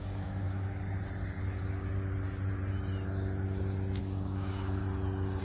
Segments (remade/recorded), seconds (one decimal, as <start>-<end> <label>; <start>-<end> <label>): 0.0-0.8 remade; 0.8-4.0 recorded; 4.0-4.8 remade; 4.8-5.4 recorded